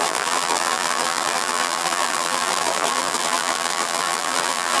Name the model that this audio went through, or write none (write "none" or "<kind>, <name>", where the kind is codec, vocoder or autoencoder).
vocoder, BigVGAN v2